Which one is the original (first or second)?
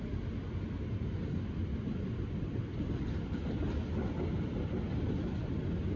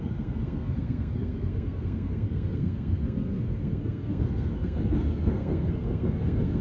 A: first